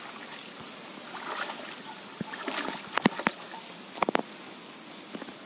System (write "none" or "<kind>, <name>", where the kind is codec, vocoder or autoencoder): none